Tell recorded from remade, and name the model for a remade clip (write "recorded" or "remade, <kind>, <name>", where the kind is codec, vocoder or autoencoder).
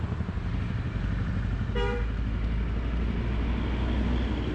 recorded